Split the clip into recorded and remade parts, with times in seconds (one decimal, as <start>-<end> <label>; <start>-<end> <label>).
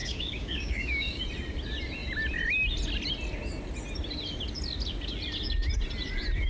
0.0-1.2 remade; 1.2-6.5 recorded